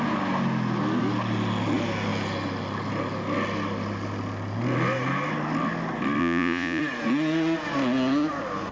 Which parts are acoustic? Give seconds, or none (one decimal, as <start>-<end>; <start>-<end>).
0.0-6.2; 6.8-8.7